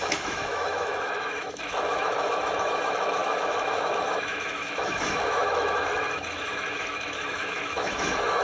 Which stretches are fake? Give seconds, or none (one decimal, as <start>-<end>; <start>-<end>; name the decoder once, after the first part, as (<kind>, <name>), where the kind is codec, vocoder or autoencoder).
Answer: 0.0-8.4 (autoencoder, DAC-VAE)